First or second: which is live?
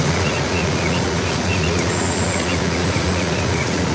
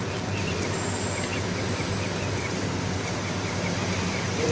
second